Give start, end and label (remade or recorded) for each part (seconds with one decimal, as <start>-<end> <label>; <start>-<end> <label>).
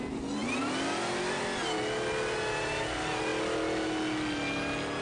0.0-5.0 recorded